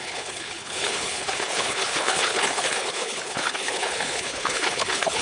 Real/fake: fake